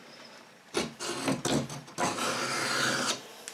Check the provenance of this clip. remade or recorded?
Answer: recorded